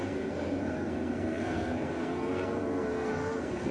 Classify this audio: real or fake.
fake